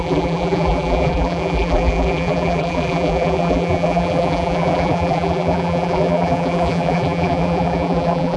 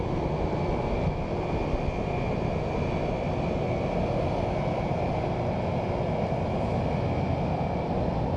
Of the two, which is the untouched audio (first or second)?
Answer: second